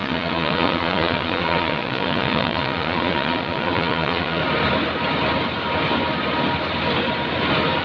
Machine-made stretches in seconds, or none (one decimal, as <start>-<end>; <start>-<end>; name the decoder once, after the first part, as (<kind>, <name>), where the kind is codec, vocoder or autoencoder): 0.0-4.4 (vocoder, Vocos)